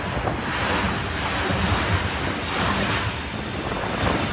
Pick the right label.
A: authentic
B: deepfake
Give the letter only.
A